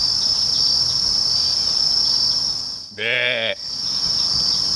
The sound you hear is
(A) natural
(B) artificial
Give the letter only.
A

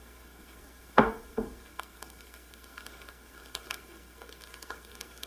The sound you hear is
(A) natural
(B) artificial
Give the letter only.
B